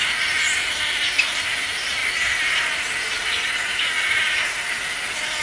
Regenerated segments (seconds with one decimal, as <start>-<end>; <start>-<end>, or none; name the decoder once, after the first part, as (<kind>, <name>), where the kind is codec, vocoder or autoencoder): none